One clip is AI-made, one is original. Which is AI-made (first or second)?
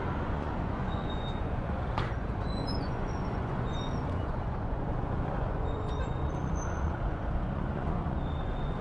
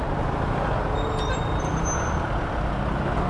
first